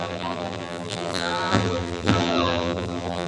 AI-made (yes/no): yes